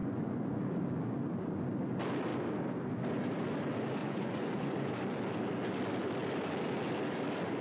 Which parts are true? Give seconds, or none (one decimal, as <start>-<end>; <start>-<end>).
0.6-4.0; 4.9-7.6